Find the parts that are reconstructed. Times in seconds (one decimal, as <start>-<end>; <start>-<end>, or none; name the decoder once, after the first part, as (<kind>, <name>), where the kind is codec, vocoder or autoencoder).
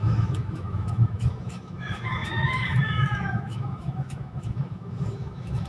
0.0-5.7 (autoencoder, DAC-VAE)